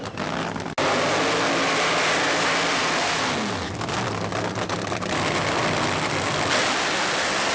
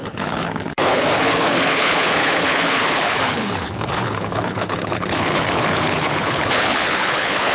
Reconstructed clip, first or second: second